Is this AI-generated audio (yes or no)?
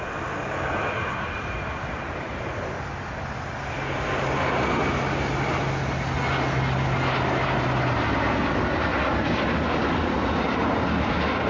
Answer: no